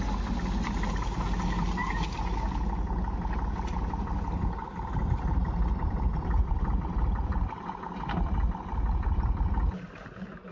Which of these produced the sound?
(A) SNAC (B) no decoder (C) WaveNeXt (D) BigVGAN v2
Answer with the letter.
B